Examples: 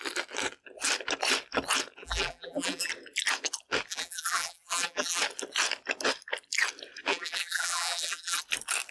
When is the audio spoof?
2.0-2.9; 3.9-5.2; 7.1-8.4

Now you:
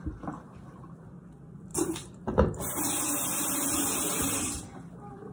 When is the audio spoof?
1.7-5.3